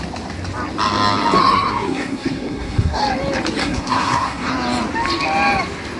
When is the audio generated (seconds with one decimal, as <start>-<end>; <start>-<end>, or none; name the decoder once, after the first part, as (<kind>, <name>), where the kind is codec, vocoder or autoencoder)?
1.4-3.0 (codec, SNAC); 3.6-4.5